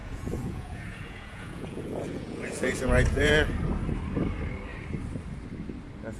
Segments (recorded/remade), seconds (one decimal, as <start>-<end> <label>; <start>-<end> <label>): 0.0-3.3 remade; 3.3-6.2 recorded

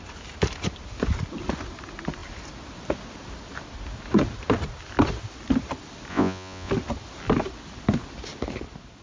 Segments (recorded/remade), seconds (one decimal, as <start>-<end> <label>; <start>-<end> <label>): 0.0-6.1 recorded; 6.1-6.7 remade; 6.7-9.0 recorded